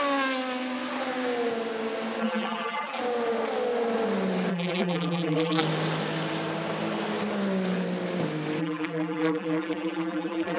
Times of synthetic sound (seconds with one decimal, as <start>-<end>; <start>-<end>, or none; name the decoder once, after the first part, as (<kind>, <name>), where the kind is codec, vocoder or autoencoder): 2.2-3.0 (vocoder, BigVGAN v2); 4.5-5.6; 8.6-10.6